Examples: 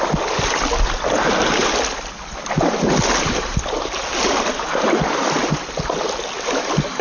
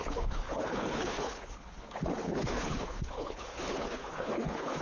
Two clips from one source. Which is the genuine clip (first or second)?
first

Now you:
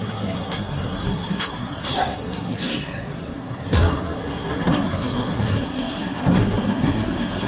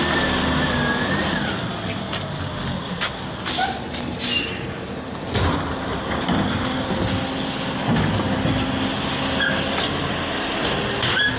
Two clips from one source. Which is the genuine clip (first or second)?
second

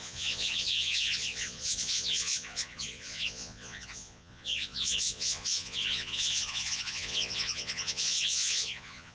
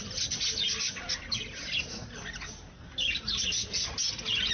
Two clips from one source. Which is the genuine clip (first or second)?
second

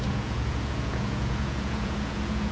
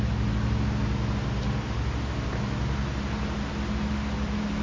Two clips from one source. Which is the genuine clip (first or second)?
second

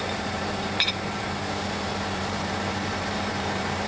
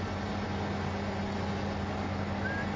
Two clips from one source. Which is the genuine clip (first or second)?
second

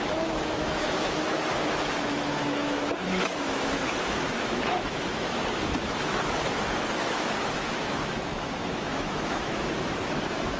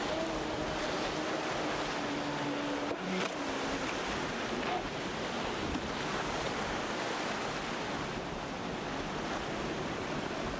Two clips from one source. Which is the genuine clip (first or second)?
second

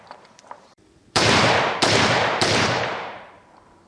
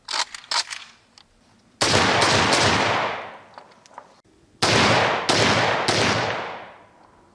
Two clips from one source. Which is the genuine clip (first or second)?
second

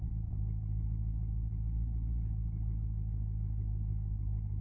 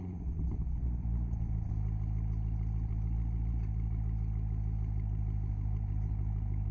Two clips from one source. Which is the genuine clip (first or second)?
second